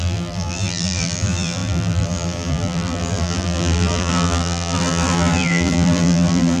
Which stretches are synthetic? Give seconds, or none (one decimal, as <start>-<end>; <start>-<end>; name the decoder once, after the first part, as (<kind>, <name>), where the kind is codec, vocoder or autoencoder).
0.0-6.6 (vocoder, BigVGAN v2)